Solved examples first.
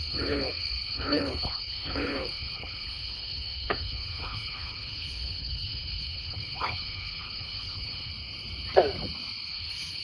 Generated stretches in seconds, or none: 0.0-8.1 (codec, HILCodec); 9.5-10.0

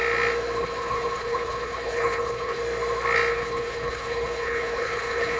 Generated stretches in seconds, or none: 0.6-2.6 (codec, HILCodec); 3.3-5.4